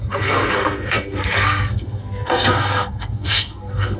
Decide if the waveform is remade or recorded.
remade